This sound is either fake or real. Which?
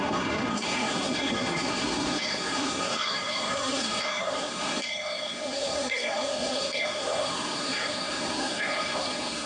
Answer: fake